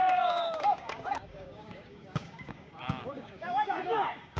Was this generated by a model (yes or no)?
yes